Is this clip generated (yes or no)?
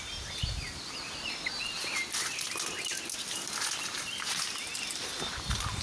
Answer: no